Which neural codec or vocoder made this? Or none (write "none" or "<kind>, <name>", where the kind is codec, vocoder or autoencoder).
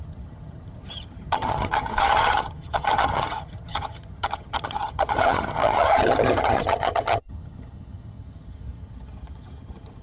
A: vocoder, HiFi-GAN